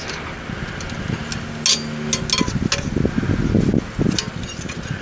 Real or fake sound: real